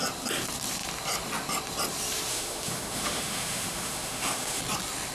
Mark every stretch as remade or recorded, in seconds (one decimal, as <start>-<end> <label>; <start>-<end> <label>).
0.0-2.3 recorded; 2.3-4.6 remade; 4.6-5.1 recorded